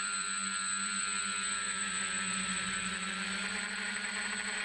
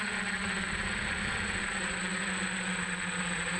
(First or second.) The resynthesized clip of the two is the first